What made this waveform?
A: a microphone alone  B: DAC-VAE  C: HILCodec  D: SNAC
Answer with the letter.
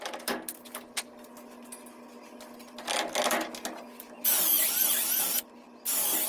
A